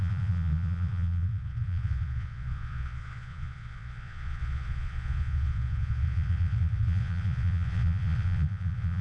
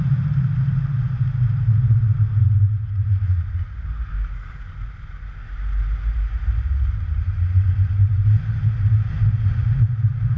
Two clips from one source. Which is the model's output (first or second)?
first